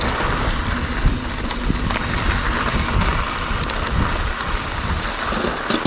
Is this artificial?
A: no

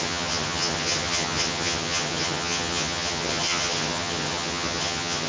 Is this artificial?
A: yes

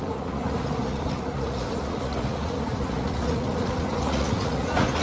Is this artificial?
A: yes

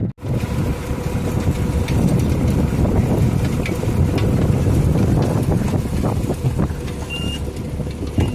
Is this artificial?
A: no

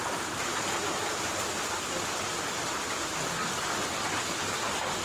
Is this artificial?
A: no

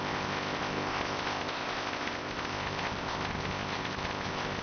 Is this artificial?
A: yes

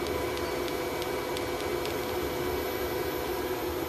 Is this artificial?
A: no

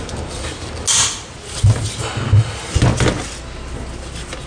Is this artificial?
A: no